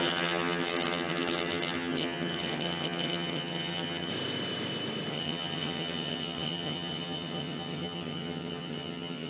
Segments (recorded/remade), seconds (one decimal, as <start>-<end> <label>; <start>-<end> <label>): 0.0-4.1 remade; 4.1-5.1 recorded; 5.1-9.3 remade